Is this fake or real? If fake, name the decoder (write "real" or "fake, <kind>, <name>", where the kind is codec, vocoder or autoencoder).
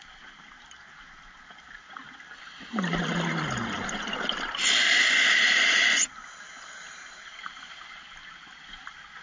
real